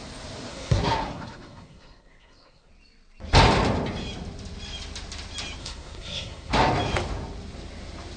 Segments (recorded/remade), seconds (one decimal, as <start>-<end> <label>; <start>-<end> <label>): 0.0-0.5 recorded; 0.5-2.7 remade; 2.7-5.6 recorded; 5.6-6.5 remade; 6.5-8.2 recorded

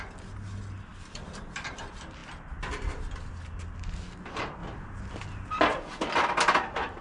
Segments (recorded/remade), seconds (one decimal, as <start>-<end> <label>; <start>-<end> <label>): 0.0-0.9 recorded; 0.9-1.8 remade; 1.8-4.6 recorded; 4.6-5.6 remade; 5.6-7.0 recorded

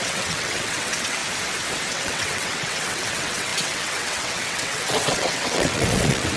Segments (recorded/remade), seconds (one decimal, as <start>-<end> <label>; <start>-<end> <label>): 0.0-1.2 remade; 1.2-1.9 recorded; 1.9-6.4 remade

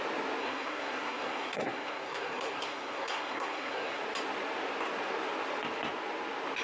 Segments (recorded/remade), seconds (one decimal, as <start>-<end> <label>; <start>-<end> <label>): 0.0-0.4 recorded; 0.4-4.0 remade; 4.0-6.6 recorded

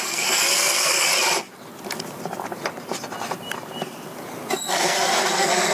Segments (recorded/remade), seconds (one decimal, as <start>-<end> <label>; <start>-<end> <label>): 0.0-1.1 remade; 1.1-4.5 recorded; 4.5-5.7 remade

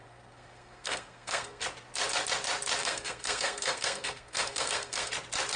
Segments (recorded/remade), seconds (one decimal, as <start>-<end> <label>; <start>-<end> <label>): 0.0-1.6 remade; 1.6-2.8 recorded; 2.8-5.1 remade; 5.1-5.6 recorded